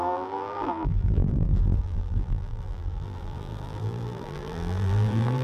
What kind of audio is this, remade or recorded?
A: remade